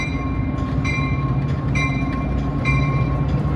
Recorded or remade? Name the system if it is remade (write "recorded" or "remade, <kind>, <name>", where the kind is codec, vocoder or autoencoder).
remade, vocoder, BigVGAN v2